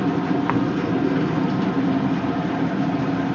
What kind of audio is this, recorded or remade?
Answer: recorded